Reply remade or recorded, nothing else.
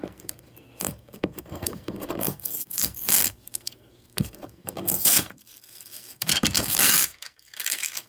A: remade